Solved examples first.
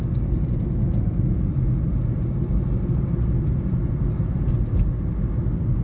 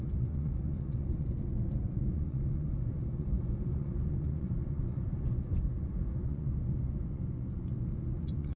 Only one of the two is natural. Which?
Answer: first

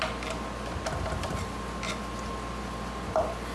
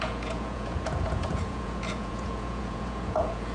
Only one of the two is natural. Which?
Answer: first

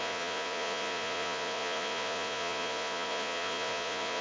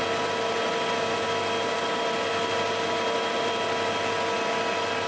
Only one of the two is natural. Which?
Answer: second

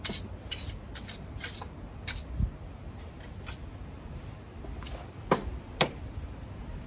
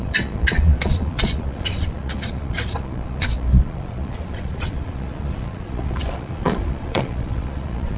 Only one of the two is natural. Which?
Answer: first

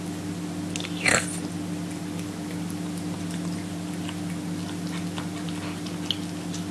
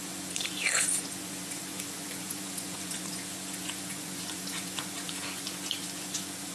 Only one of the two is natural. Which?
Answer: first